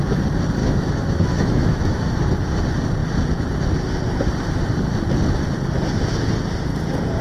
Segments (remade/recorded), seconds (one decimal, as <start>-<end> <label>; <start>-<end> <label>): 0.0-0.6 recorded; 0.6-2.2 remade; 2.2-7.2 recorded